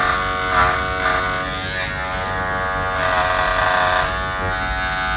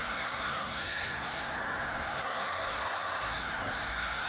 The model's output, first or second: second